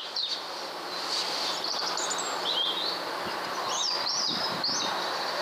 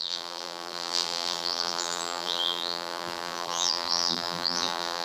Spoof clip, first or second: second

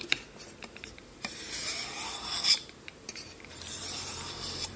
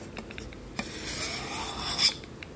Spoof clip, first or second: first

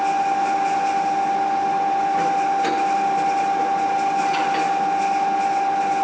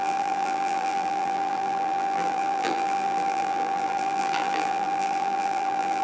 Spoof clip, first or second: second